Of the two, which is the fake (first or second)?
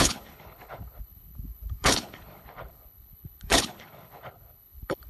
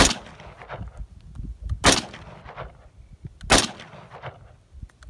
first